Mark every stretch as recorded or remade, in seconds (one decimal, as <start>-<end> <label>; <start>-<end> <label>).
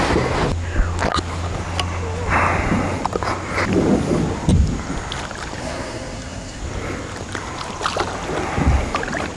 0.0-5.6 recorded; 5.6-6.6 remade; 6.6-9.4 recorded